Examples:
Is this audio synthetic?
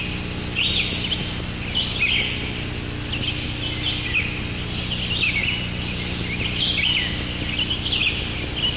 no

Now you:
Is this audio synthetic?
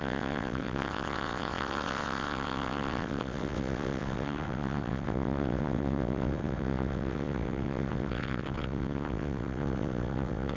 yes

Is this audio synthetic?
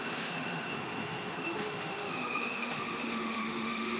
yes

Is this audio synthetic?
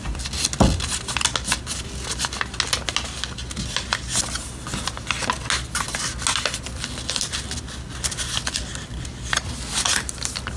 no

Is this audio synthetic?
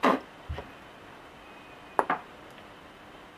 no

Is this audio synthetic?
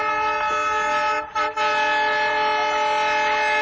no